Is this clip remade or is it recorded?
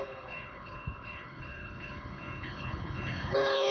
remade